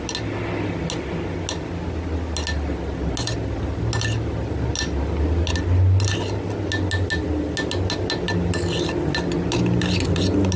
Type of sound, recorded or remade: recorded